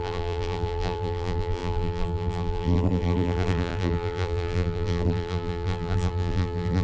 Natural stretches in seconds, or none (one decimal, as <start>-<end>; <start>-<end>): none